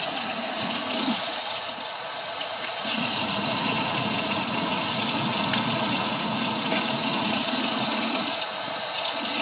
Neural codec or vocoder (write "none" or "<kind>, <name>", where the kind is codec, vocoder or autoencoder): vocoder, Vocos